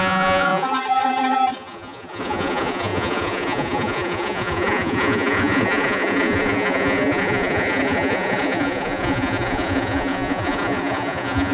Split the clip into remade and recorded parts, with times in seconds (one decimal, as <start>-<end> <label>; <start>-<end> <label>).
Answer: 0.0-11.5 remade